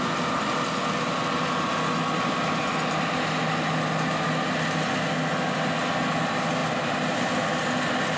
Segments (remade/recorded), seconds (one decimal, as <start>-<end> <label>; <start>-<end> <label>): 0.0-6.6 recorded; 6.6-7.2 remade; 7.2-8.2 recorded